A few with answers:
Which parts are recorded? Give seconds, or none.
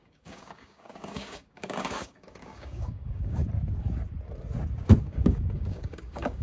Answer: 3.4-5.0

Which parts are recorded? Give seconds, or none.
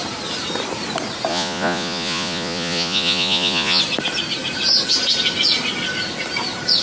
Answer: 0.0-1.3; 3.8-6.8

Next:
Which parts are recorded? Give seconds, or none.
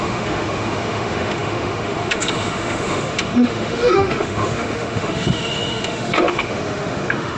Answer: none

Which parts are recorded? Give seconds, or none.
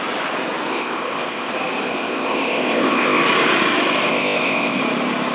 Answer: 0.0-0.7; 1.5-1.9; 3.2-4.1; 4.8-5.3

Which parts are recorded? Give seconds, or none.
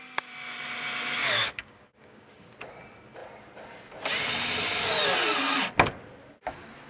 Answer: 0.0-1.2; 2.5-6.9